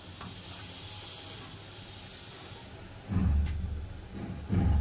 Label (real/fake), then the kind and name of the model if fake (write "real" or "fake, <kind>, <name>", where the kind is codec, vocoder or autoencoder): real